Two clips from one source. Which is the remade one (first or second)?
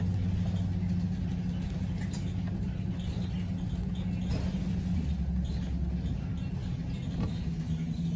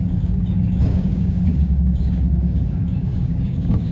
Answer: second